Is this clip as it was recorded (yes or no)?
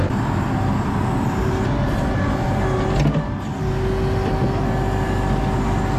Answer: yes